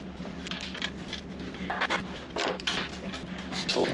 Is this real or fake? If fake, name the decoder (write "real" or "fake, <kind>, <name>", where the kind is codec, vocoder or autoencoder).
real